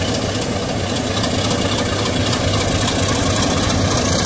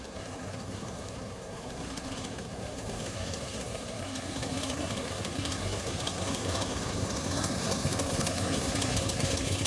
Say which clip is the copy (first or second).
second